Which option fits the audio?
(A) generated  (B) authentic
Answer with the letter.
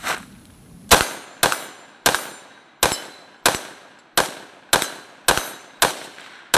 B